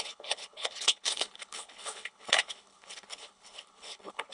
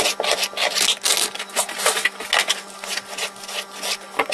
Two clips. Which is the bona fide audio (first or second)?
second